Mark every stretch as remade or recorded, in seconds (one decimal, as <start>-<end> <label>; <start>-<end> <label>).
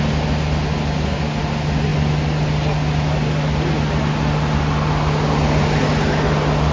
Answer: 0.0-6.7 recorded